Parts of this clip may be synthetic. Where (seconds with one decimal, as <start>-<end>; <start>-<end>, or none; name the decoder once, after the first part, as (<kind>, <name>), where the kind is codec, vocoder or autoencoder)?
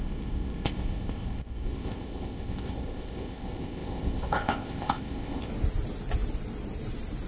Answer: 0.0-5.5 (codec, ZipCodec)